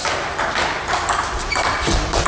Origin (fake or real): real